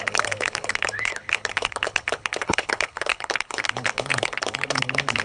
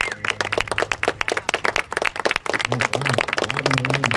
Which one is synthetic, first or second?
first